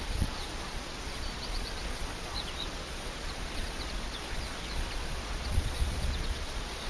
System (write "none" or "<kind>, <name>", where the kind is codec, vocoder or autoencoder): vocoder, Vocos